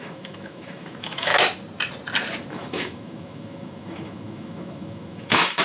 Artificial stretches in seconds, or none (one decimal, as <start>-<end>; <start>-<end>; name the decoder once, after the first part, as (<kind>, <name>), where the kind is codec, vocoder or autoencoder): 0.0-1.3 (autoencoder, DAC-VAE); 2.5-5.6